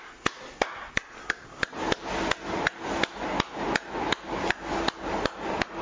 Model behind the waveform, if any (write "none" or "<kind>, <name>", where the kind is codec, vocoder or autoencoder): none